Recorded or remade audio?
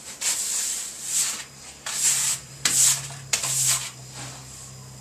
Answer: recorded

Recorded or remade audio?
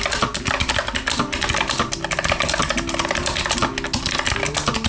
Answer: recorded